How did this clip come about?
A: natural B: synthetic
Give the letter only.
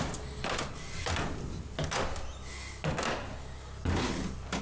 A